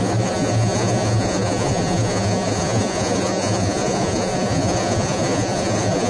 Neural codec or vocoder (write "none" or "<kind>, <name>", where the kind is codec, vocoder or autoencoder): vocoder, Vocos